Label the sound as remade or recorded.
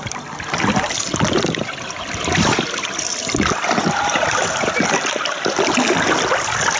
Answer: recorded